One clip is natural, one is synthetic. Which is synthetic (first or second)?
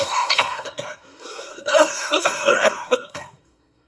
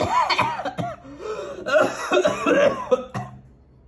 first